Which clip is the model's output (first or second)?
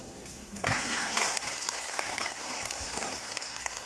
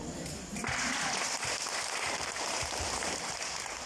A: first